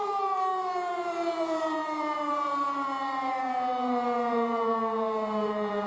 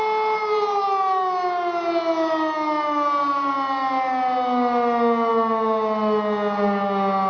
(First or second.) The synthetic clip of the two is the first